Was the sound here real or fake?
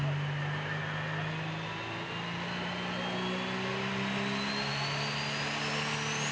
real